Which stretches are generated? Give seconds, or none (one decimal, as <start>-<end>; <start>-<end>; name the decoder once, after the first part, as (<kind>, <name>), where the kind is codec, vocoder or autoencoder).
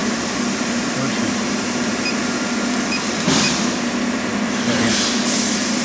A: 0.0-0.8 (vocoder, BigVGAN v2)